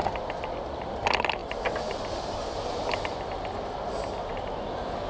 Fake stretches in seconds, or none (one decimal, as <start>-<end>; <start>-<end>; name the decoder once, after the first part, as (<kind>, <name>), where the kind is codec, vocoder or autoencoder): none

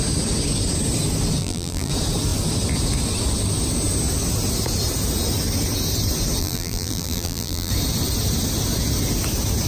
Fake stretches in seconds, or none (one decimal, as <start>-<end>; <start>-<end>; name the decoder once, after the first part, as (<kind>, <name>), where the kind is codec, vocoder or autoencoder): 1.4-1.9 (vocoder, BigVGAN v2); 6.4-7.7

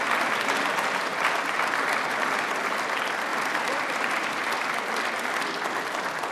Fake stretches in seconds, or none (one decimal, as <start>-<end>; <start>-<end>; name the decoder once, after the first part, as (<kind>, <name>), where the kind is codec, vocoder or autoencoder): 3.3-4.5 (vocoder, BigVGAN v2)

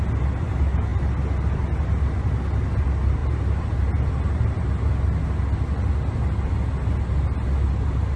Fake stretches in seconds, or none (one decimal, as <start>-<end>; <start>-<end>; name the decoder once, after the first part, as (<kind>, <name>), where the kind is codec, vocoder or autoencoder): 3.2-4.6 (vocoder, BigVGAN v2)

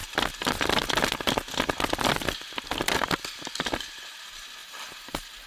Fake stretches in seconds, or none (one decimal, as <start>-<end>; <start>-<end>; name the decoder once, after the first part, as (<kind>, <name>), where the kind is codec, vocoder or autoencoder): 4.6-5.5 (vocoder, BigVGAN v2)

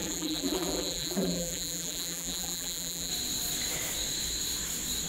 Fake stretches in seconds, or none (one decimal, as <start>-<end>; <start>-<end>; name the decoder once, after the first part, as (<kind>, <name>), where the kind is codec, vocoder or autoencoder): 0.0-3.1 (vocoder, BigVGAN v2)

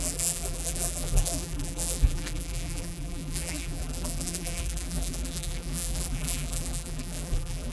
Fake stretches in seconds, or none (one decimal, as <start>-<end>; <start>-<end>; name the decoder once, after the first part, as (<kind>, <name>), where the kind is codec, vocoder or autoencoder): 0.0-7.7 (vocoder, BigVGAN v2)

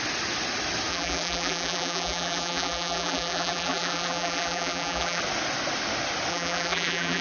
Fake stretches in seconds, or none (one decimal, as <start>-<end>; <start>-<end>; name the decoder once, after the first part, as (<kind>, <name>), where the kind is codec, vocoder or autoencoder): 0.9-5.2 (vocoder, BigVGAN v2); 6.3-7.2